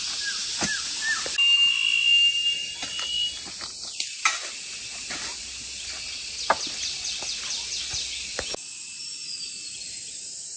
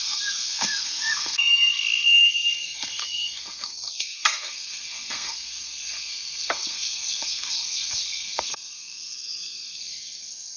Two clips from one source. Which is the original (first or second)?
first